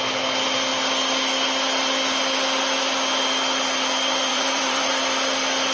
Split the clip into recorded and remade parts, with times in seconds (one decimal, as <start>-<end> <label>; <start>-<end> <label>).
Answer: 0.0-4.3 recorded; 4.3-4.9 remade; 4.9-5.7 recorded